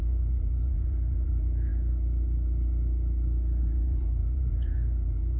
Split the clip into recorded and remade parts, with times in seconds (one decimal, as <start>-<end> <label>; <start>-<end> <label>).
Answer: 0.0-1.7 remade; 1.7-3.6 recorded; 3.6-5.4 remade